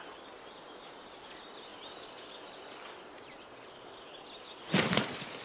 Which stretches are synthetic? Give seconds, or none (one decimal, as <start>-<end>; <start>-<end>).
none